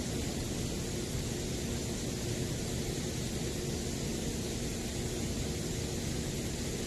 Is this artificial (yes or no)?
no